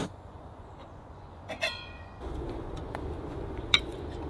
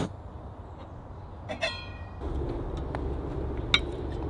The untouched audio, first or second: second